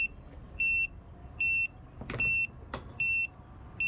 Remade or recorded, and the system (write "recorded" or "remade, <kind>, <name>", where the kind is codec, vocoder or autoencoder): recorded